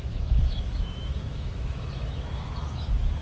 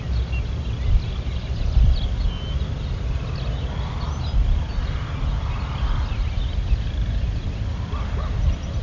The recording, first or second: second